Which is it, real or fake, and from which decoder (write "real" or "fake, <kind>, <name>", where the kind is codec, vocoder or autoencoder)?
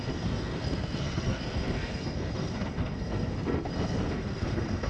fake, codec, SNAC